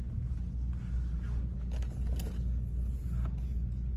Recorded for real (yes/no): yes